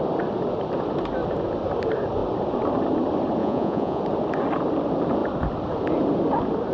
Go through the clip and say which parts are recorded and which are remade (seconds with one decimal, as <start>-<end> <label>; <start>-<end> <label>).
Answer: 0.0-3.4 recorded; 3.4-4.0 remade; 4.0-6.7 recorded